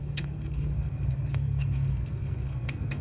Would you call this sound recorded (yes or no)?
no